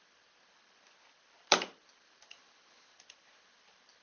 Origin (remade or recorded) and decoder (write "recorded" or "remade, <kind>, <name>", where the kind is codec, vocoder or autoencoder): recorded